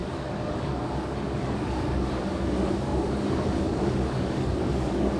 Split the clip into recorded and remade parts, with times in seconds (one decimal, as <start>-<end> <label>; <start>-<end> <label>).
0.0-5.2 remade